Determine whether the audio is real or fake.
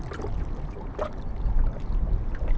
real